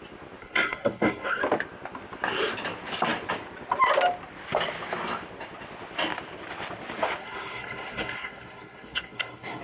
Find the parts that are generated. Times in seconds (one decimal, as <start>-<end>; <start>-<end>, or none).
0.4-1.4; 7.2-9.6